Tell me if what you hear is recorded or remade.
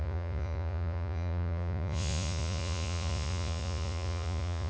remade